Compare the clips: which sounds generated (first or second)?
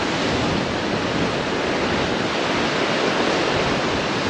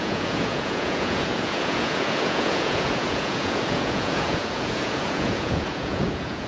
second